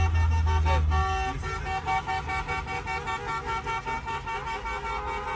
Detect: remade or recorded recorded